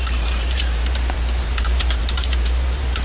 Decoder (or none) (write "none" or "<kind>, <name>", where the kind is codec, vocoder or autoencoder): vocoder, BigVGAN v2